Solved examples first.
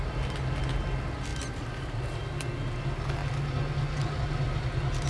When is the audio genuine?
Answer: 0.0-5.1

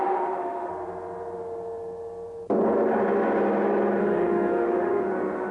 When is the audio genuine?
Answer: 0.7-4.0

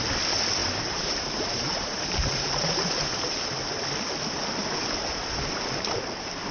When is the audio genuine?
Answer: 0.0-0.6; 3.8-4.6; 5.2-6.5

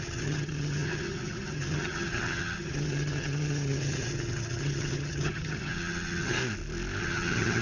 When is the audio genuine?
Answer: 6.4-7.0

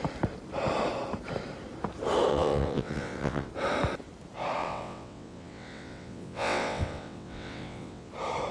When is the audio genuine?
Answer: 0.0-2.3; 3.5-4.6; 8.1-8.5